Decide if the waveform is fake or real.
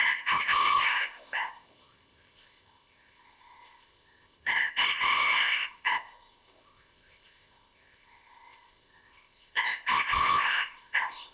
fake